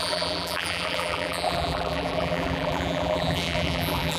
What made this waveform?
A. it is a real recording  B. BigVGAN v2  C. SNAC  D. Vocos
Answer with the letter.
B